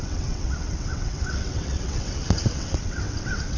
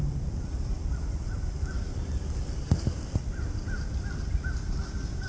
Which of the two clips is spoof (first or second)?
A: first